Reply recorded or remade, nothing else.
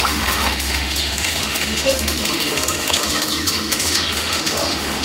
remade